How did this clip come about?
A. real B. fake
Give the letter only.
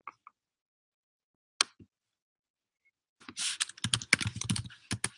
A